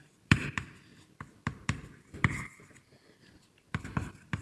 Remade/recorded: remade